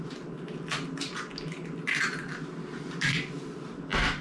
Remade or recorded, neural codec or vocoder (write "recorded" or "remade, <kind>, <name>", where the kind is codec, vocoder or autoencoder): recorded